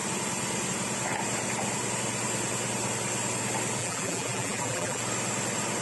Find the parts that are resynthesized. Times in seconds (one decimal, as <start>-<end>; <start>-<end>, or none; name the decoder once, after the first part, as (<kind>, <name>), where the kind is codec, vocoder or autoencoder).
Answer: 3.8-5.0 (vocoder, BigVGAN v2)